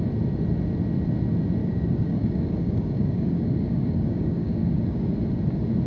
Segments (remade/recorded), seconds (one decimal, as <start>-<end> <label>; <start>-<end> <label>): 0.0-1.6 recorded; 1.6-5.1 remade; 5.1-5.9 recorded